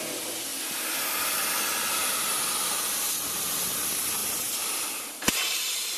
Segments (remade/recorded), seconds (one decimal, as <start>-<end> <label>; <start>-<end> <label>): 0.0-6.0 recorded

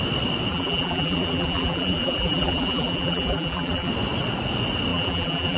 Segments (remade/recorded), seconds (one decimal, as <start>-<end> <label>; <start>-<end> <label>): 0.0-0.5 recorded; 0.5-3.9 remade; 3.9-4.9 recorded; 4.9-5.6 remade